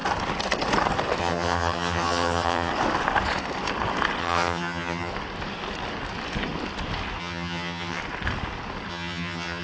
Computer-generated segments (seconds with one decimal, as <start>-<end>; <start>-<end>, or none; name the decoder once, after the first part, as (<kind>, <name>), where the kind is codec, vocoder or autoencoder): 1.2-2.7 (vocoder, HiFi-GAN); 4.2-5.1; 7.2-8.0; 8.9-9.6